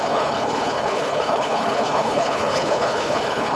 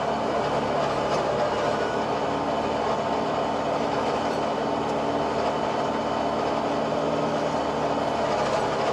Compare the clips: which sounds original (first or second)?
second